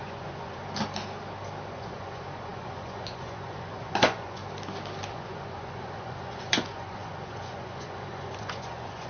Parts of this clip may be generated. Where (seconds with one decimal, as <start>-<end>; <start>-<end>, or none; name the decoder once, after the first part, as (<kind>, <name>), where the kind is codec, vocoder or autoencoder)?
0.0-0.6 (vocoder, Vocos); 1.7-4.4; 5.1-9.1